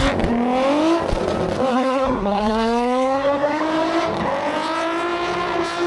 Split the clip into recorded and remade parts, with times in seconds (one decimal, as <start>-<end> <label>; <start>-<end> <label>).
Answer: 0.0-1.7 recorded; 1.7-3.6 remade; 3.6-5.9 recorded